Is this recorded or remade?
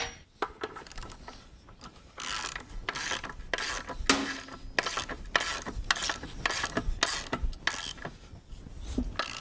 recorded